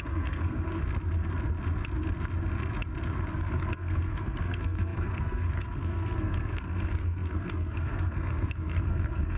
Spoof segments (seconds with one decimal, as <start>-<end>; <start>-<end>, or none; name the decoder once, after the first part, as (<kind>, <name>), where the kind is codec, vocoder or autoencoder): 0.0-0.8 (codec, SNAC); 3.3-9.4